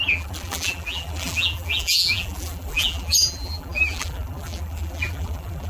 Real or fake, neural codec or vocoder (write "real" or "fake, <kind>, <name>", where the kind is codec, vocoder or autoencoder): fake, vocoder, BigVGAN v2